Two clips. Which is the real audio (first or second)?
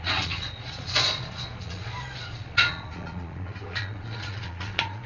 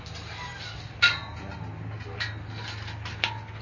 second